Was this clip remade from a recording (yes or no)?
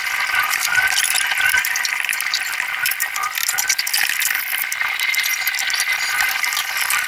yes